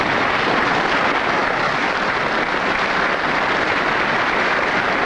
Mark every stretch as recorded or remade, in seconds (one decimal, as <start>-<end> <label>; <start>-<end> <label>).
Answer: 0.0-5.1 recorded